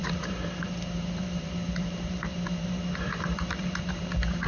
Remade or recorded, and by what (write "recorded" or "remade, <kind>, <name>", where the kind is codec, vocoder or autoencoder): remade, vocoder, BigVGAN v2